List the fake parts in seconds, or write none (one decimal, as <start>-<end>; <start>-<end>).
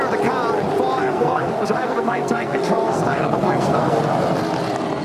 1.0-4.0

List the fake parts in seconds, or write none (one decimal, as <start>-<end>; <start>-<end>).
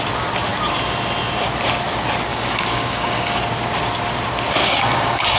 2.3-3.4; 4.6-5.4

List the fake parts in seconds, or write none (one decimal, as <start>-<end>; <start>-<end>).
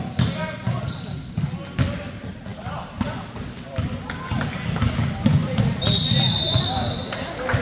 none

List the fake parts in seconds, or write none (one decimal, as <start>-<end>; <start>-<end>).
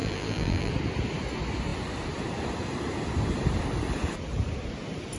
0.0-0.7